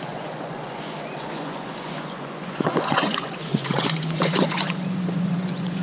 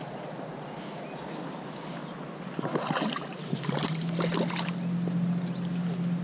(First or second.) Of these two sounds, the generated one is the first